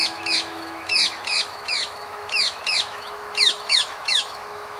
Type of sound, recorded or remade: remade